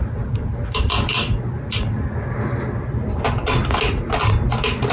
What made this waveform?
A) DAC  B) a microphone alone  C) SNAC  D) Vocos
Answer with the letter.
B